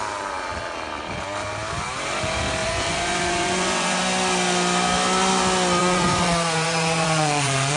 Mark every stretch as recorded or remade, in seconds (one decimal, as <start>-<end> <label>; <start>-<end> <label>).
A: 0.0-2.6 recorded; 2.6-4.0 remade; 4.0-5.8 recorded; 5.8-7.8 remade